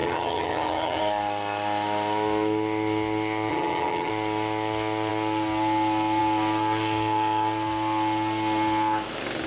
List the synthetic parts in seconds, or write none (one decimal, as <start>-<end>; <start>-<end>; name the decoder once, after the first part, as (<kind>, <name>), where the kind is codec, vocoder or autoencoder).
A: 0.0-1.0 (vocoder, HiFi-GAN); 3.5-4.1